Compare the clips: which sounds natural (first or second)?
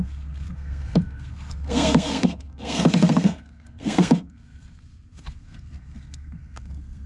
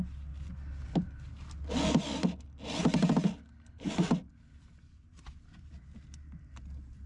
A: second